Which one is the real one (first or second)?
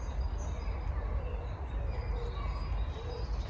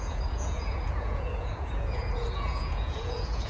first